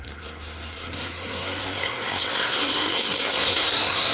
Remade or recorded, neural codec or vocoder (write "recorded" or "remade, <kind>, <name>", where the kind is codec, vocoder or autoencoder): remade, codec, SNAC